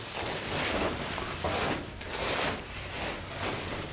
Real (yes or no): yes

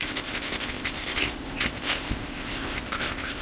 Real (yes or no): no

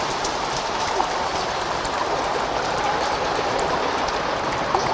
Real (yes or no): no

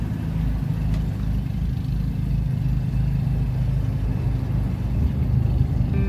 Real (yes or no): yes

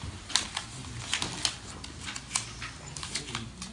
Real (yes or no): yes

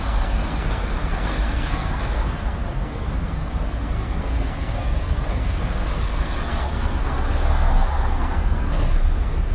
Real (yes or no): no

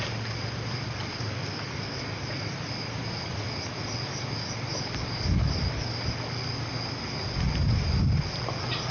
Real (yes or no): yes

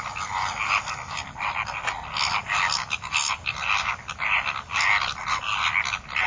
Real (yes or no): yes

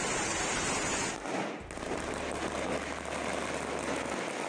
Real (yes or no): yes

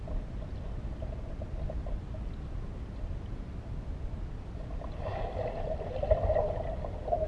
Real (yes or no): yes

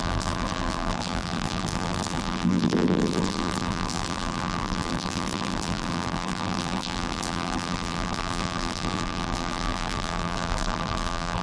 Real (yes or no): no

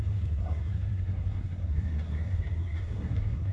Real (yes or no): no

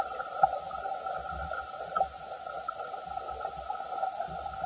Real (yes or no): yes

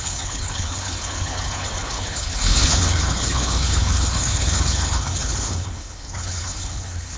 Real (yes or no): no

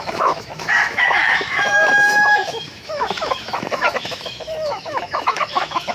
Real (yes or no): no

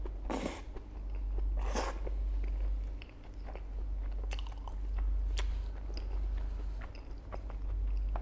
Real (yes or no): yes